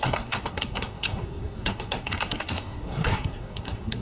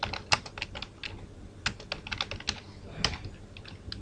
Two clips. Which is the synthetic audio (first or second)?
first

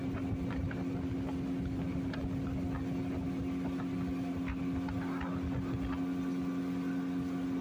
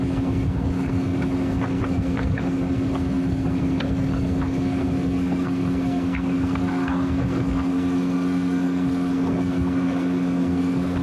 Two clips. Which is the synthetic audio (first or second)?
second